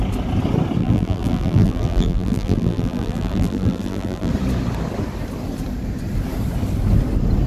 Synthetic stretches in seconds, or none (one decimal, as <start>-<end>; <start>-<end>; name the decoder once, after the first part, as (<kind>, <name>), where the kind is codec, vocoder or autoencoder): 0.8-4.3 (vocoder, BigVGAN v2)